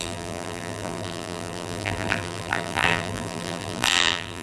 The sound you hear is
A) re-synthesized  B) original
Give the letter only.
A